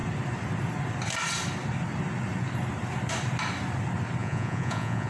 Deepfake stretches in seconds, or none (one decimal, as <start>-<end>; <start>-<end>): 4.2-5.1